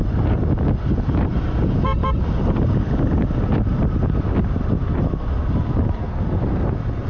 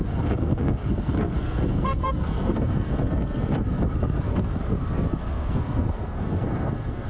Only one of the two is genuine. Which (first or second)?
first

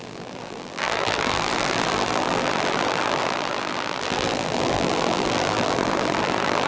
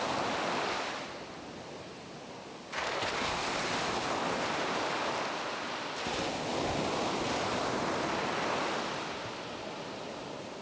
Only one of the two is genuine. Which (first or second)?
second